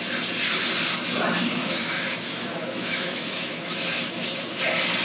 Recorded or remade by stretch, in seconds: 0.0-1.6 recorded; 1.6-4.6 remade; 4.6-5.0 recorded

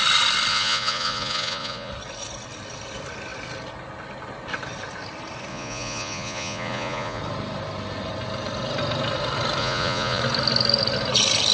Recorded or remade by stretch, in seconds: 0.0-0.5 recorded; 0.5-1.9 remade; 1.9-5.5 recorded; 5.5-7.2 remade; 7.2-9.6 recorded; 9.6-10.2 remade; 10.2-11.5 recorded

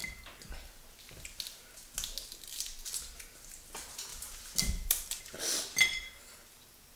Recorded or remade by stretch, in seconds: 0.0-4.1 recorded; 4.1-5.2 remade; 5.2-7.0 recorded